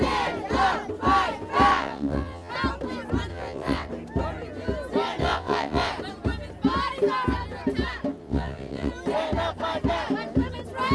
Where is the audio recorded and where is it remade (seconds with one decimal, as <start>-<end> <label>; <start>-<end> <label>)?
0.0-1.7 recorded; 1.7-2.5 remade; 2.5-3.3 recorded; 3.3-3.9 remade; 3.9-5.2 recorded; 5.2-5.9 remade; 5.9-8.2 recorded; 8.2-8.9 remade; 8.9-10.9 recorded